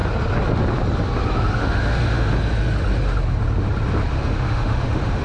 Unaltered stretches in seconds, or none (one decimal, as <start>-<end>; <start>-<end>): 0.0-1.6; 2.3-4.1